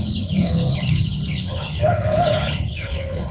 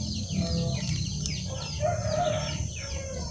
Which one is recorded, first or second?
second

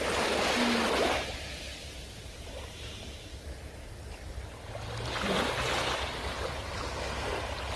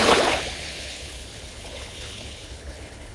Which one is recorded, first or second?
first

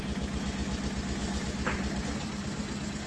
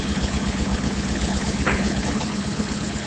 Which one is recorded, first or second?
first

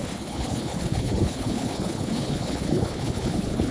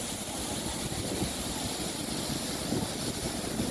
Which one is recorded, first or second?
second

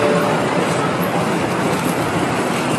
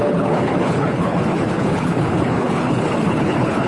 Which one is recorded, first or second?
first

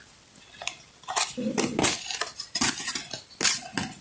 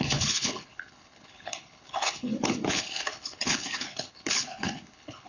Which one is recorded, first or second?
first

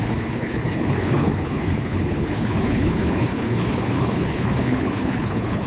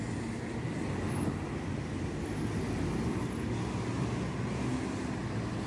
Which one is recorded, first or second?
second